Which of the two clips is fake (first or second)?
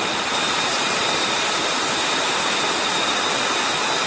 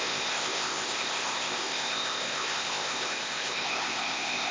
second